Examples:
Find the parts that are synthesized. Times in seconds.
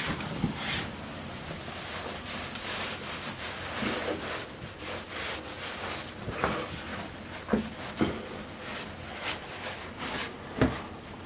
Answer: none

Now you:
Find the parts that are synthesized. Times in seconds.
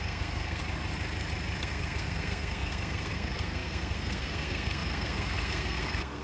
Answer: 0.0-0.6; 1.6-6.2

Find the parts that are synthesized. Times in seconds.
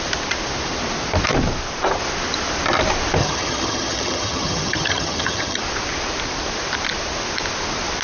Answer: 3.2-5.6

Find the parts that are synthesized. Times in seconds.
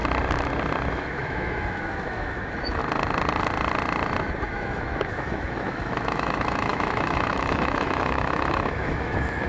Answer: 0.9-2.8; 4.5-9.5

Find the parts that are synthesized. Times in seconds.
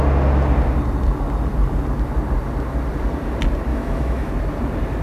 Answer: 3.7-4.3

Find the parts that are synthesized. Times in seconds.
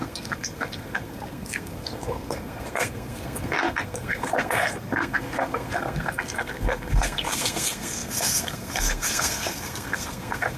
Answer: 0.0-10.6